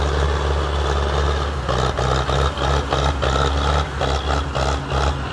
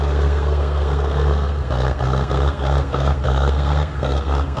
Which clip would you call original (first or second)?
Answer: first